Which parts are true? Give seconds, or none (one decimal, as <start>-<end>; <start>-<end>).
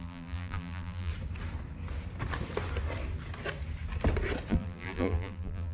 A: 1.1-4.5